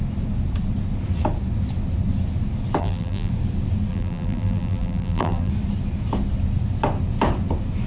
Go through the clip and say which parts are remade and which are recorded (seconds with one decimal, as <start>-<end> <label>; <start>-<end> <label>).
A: 0.0-2.8 recorded; 2.8-3.3 remade; 3.3-3.9 recorded; 3.9-5.5 remade; 5.5-7.9 recorded